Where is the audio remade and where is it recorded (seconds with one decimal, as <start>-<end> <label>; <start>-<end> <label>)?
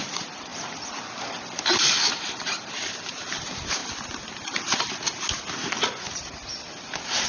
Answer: 0.0-3.8 remade; 3.8-6.1 recorded; 6.1-7.3 remade